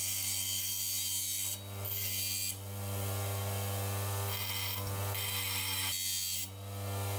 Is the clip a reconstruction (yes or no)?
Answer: no